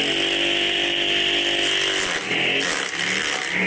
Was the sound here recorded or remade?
recorded